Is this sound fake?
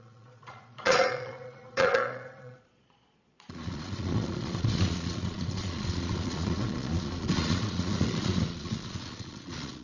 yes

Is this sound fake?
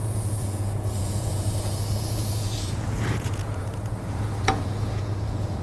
yes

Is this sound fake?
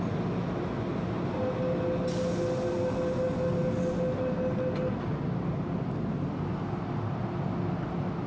no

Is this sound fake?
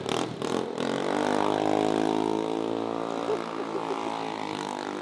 no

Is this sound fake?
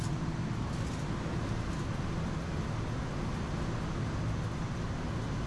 no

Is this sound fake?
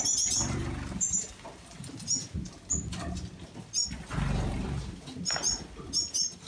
no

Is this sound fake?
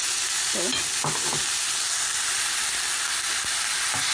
no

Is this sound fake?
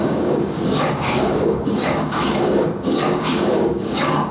yes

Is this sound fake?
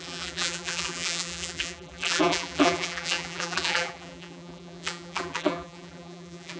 yes